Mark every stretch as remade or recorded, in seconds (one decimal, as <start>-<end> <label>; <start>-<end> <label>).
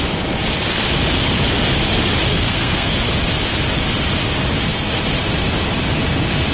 0.0-2.3 recorded; 2.3-2.9 remade; 2.9-6.5 recorded